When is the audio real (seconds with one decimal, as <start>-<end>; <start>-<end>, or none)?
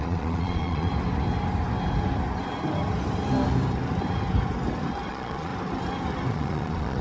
0.9-5.1; 5.5-6.3